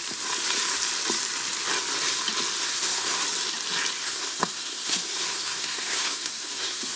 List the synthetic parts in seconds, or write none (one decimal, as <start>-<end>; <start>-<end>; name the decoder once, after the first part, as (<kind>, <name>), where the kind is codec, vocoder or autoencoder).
2.6-3.2 (codec, SNAC); 4.0-7.0